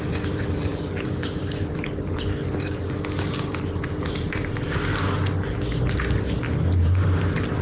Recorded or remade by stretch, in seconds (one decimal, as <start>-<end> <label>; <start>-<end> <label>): 0.0-2.4 remade; 2.4-4.0 recorded; 4.0-4.9 remade; 4.9-7.6 recorded